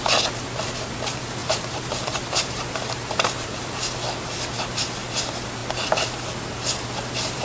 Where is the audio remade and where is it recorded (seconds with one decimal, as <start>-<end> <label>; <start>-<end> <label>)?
0.0-1.4 recorded; 1.4-3.9 remade; 3.9-7.4 recorded